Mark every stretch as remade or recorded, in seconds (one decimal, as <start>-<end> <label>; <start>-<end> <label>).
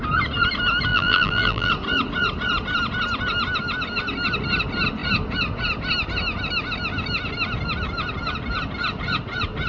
0.0-0.9 recorded; 0.9-1.7 remade; 1.7-9.7 recorded